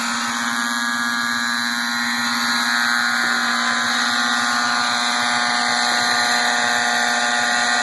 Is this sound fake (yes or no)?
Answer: no